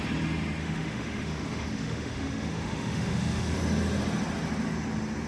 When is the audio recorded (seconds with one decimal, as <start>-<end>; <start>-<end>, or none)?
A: 0.0-0.6; 3.6-5.3